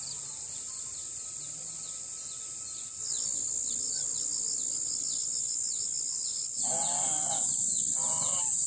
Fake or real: real